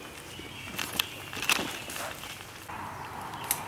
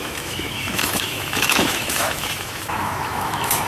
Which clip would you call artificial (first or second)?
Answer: second